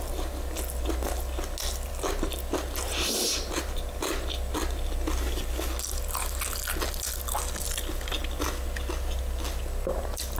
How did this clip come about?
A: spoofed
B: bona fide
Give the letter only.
B